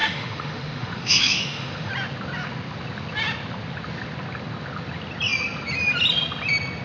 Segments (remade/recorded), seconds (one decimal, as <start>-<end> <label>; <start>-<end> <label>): 0.0-1.9 remade; 1.9-6.8 recorded